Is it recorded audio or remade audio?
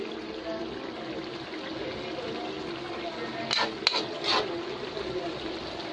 recorded